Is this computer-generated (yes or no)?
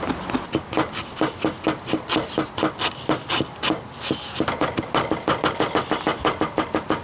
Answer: no